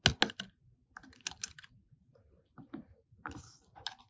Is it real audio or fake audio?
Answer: real